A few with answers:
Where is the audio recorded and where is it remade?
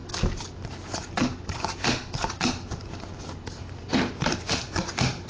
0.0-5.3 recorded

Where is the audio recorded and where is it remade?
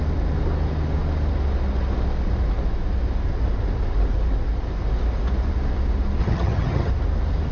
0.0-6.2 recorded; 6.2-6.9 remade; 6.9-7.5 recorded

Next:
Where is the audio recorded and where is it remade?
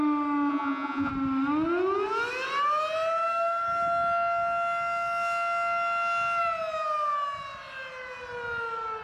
0.0-0.5 recorded; 0.5-1.1 remade; 1.1-9.0 recorded